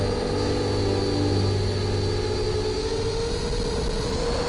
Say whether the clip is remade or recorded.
recorded